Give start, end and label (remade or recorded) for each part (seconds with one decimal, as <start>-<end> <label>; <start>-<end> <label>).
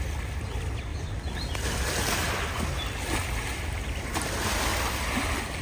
0.0-5.6 recorded